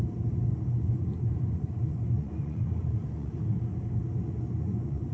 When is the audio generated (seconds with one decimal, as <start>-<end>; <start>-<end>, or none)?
0.5-3.6; 4.2-5.1